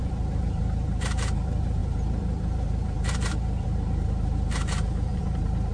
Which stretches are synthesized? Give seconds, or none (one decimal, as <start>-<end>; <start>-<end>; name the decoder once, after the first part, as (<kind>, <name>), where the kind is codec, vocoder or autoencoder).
0.0-5.7 (vocoder, BigVGAN v2)